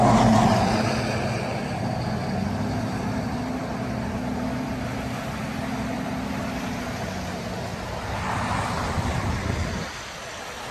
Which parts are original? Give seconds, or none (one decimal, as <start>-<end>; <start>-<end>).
0.0-2.2; 6.8-7.7; 9.3-10.7